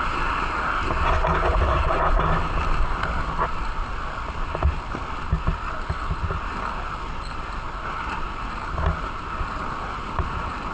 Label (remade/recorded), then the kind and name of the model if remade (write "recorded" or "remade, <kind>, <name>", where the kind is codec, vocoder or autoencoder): recorded